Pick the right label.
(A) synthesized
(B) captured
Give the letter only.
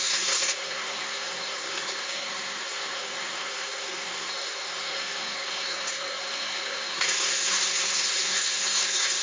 A